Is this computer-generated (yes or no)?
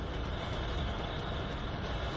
no